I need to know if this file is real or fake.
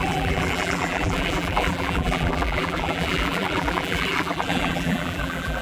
fake